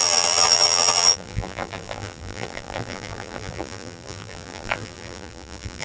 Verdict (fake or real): fake